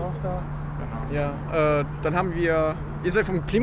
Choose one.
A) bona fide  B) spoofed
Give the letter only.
A